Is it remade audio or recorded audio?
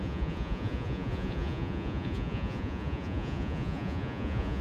remade